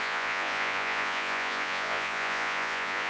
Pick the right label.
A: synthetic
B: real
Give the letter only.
A